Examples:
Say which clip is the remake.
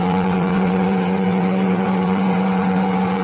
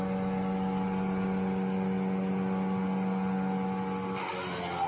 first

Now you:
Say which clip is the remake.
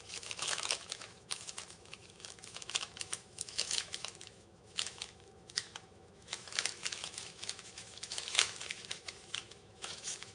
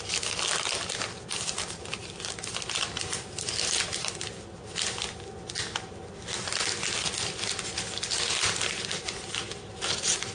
first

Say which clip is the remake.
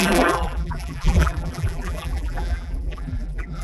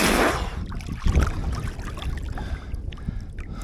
first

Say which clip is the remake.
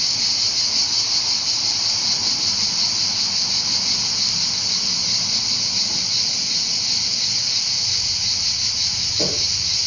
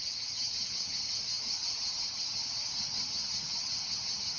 second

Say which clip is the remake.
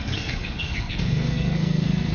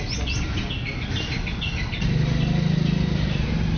first